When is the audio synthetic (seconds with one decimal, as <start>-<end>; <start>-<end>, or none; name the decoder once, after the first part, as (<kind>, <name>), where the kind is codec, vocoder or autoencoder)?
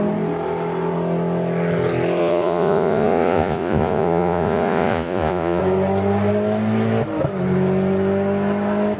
2.2-5.6 (vocoder, Vocos)